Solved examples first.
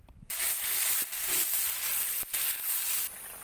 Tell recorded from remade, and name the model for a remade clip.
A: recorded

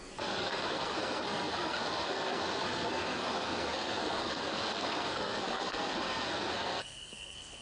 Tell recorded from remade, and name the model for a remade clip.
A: remade, codec, SNAC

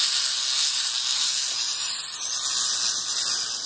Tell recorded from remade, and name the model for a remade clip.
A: recorded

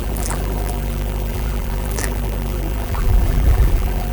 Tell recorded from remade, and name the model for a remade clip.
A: remade, vocoder, BigVGAN v2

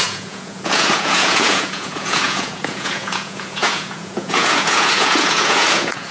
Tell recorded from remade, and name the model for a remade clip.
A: remade, vocoder, Vocos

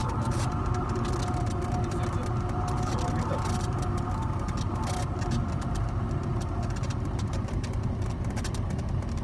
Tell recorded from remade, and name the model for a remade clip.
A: recorded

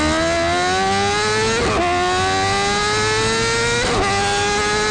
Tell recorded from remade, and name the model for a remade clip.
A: recorded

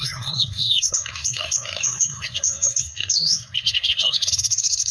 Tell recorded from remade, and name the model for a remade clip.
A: remade, codec, SNAC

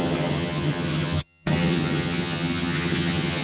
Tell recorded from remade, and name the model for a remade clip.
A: remade, vocoder, HiFi-GAN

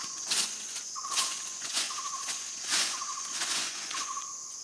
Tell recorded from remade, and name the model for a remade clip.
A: remade, vocoder, Vocos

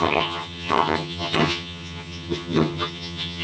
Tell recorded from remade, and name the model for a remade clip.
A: remade, vocoder, HiFi-GAN